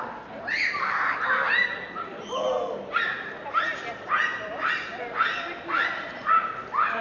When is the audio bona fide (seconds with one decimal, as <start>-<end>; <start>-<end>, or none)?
0.0-7.0